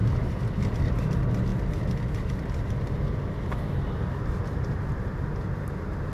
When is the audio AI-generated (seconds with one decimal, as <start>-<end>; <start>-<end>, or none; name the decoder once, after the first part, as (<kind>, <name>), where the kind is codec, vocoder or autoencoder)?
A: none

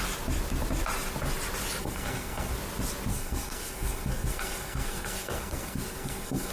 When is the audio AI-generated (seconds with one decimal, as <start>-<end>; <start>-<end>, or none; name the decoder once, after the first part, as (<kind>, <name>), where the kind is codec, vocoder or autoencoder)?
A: 1.8-2.5 (codec, SNAC); 3.1-6.5

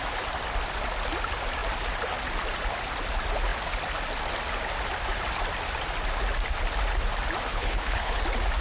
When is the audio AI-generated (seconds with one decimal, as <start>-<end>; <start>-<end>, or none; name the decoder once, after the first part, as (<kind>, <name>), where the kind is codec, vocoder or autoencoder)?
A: 7.5-8.2 (codec, HILCodec)